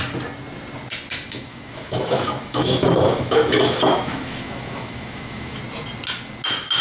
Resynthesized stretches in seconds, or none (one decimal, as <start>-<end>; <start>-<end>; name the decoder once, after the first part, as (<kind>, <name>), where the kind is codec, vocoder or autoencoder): 1.5-5.6 (autoencoder, DAC-VAE)